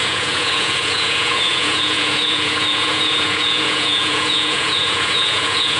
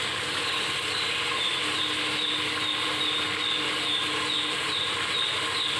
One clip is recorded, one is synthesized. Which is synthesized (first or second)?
first